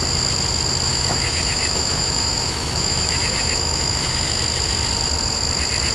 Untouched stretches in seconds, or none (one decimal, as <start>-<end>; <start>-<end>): 0.0-0.9; 4.4-5.9